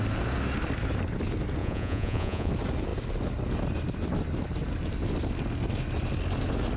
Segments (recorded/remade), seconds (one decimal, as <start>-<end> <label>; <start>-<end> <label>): 0.0-1.6 recorded; 1.6-2.5 remade; 2.5-6.8 recorded